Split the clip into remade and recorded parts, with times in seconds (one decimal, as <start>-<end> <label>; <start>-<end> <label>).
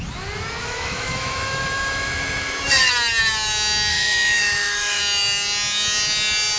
0.0-0.6 recorded; 0.6-2.9 remade; 2.9-3.9 recorded; 3.9-5.0 remade; 5.0-6.6 recorded